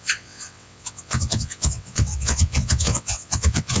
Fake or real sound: fake